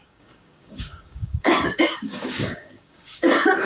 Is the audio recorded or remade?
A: remade